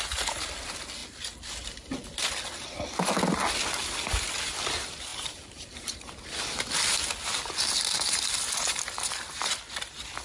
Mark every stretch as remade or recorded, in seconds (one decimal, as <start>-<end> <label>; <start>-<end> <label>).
0.0-5.1 recorded; 5.1-7.1 remade; 7.1-10.2 recorded